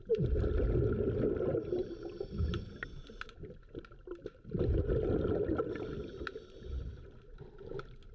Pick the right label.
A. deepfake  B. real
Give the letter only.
B